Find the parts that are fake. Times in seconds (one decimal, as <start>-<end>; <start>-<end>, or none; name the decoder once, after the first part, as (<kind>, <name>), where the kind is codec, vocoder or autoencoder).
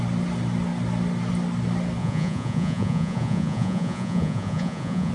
2.0-5.1 (vocoder, Vocos)